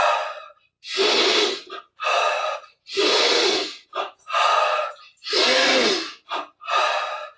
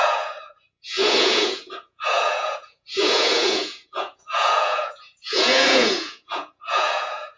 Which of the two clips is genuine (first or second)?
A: first